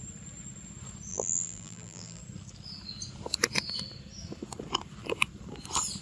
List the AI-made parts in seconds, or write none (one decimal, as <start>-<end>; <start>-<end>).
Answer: 1.1-2.2